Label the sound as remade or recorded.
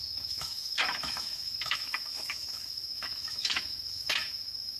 remade